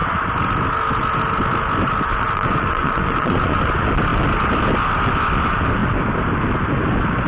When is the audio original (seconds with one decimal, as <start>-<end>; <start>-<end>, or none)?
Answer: 0.0-2.1; 3.6-7.3